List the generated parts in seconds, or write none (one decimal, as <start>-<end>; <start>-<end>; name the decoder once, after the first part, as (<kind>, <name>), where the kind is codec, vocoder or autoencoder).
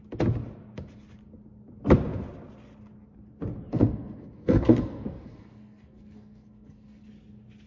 3.7-7.1 (codec, SNAC)